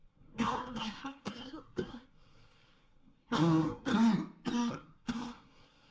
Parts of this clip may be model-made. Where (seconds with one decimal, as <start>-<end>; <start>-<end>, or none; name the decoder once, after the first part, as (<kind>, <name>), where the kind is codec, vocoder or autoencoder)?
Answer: 0.0-3.9 (codec, SNAC); 4.7-5.9